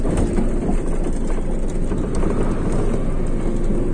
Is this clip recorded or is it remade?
recorded